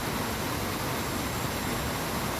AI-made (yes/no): no